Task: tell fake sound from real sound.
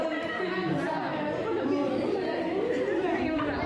real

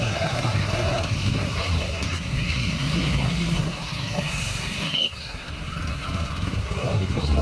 fake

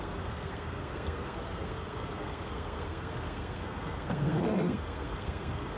fake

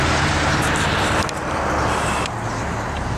real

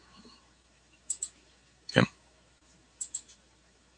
fake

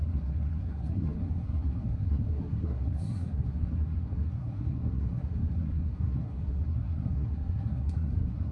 fake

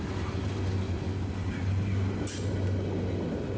real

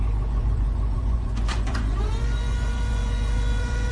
fake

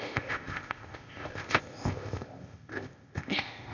fake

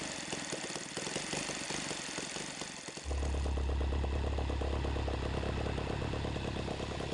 real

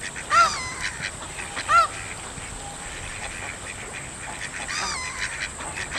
real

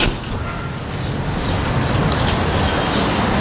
real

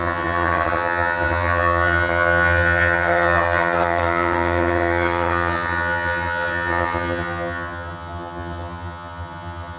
fake